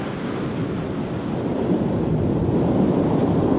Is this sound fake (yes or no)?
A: no